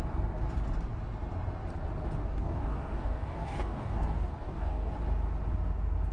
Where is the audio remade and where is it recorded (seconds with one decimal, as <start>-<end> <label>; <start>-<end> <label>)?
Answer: 0.0-2.2 recorded; 2.2-4.9 remade; 4.9-6.1 recorded